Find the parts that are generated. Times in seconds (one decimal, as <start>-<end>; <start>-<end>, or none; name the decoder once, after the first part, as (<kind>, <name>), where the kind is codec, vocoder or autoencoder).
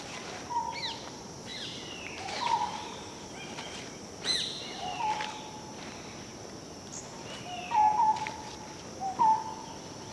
1.5-5.0 (vocoder, BigVGAN v2)